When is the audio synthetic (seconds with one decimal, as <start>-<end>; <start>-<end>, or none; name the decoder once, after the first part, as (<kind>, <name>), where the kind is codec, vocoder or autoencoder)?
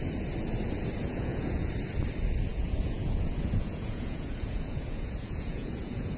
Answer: 1.0-1.7 (vocoder, Vocos); 2.5-6.2